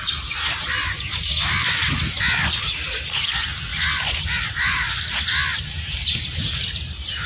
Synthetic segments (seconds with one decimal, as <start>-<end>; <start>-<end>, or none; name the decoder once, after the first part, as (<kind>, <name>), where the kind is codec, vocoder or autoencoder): 3.7-4.3 (vocoder, BigVGAN v2)